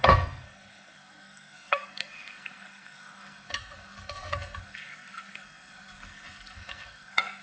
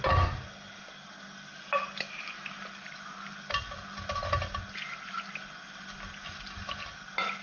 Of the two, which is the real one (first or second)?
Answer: second